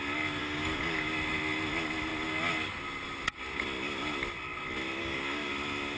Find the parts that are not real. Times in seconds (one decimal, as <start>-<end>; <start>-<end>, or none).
0.4-1.1; 5.0-5.5